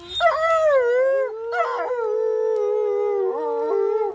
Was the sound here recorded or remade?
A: recorded